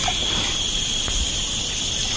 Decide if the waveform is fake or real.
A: real